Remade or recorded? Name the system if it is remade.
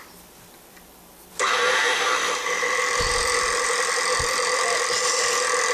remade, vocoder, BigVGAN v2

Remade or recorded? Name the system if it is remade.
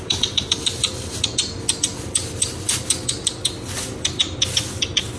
recorded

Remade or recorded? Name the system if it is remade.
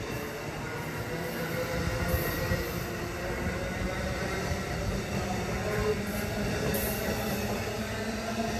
recorded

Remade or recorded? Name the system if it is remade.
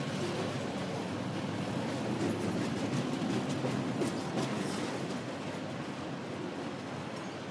recorded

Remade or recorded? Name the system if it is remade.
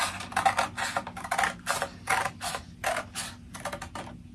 recorded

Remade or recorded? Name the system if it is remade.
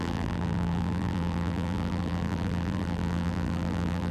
remade, vocoder, BigVGAN v2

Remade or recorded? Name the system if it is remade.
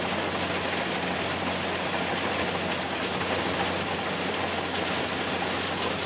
recorded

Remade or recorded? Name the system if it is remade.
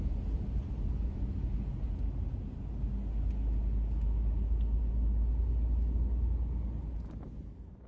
recorded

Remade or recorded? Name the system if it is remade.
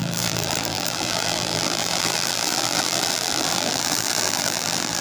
remade, vocoder, BigVGAN v2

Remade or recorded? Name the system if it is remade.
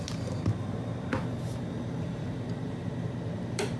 remade, vocoder, BigVGAN v2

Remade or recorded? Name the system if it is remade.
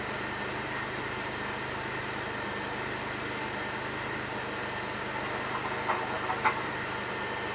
recorded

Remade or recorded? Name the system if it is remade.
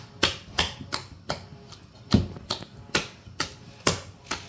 recorded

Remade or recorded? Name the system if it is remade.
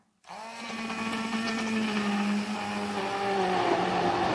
recorded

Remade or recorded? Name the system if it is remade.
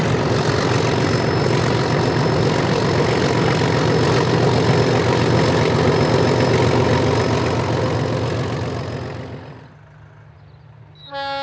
recorded